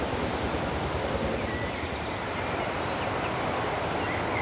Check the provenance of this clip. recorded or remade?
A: recorded